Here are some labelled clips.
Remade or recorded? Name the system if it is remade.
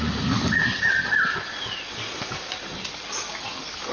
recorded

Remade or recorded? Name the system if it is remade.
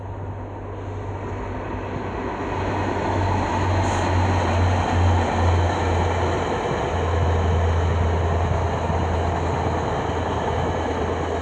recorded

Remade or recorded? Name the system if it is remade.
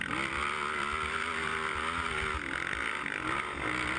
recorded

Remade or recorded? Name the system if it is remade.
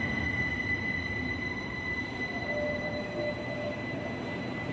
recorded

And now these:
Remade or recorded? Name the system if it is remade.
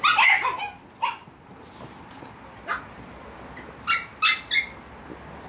recorded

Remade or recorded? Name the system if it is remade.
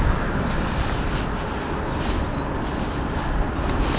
recorded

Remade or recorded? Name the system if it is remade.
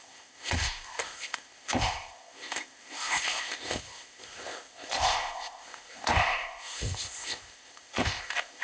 remade, codec, ZipCodec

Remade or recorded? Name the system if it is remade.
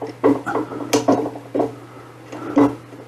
recorded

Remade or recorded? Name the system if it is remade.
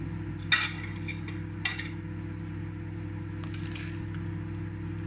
recorded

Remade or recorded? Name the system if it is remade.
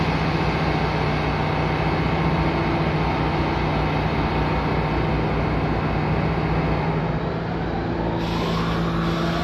recorded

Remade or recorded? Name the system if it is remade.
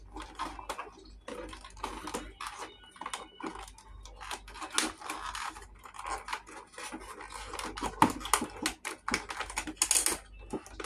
recorded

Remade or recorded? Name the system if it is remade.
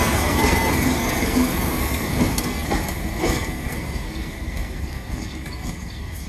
remade, codec, SNAC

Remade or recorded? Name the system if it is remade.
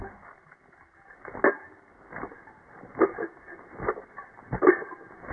recorded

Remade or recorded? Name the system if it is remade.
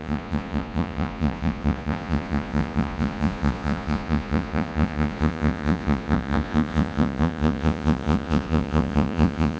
remade, vocoder, Vocos